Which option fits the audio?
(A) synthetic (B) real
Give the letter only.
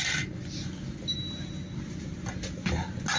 B